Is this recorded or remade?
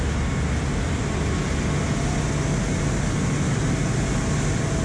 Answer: recorded